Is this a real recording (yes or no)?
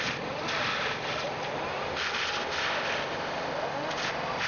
yes